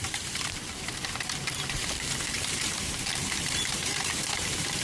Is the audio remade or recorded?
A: remade